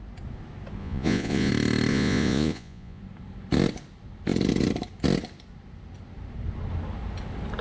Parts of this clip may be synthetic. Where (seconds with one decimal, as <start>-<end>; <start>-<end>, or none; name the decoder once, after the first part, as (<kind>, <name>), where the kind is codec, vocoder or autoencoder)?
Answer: 0.8-1.5 (vocoder, Vocos); 1.9-3.0